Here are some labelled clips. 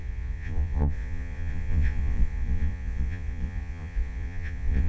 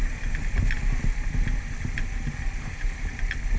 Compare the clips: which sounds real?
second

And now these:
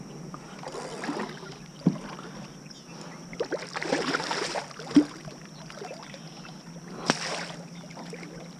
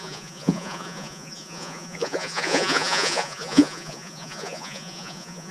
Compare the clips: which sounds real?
first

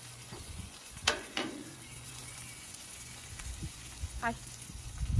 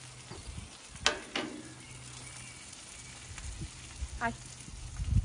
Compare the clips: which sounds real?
second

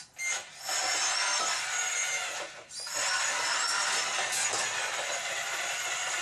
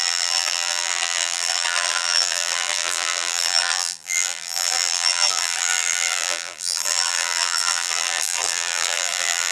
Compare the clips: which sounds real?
first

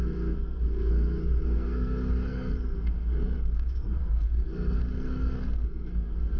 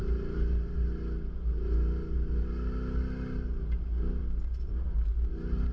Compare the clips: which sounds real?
second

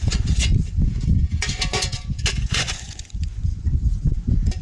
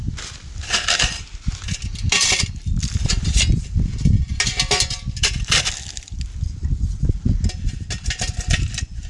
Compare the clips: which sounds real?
second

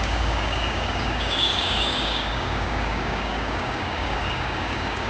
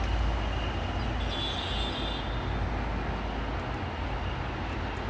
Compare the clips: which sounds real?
second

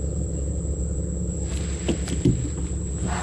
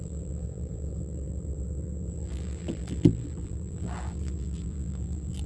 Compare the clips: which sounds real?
first